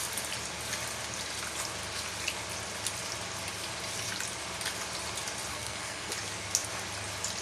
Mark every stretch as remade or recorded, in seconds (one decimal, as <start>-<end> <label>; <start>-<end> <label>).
0.0-5.5 recorded; 5.5-6.1 remade; 6.1-7.4 recorded